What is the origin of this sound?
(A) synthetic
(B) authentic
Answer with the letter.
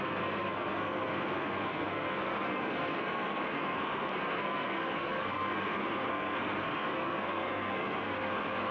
A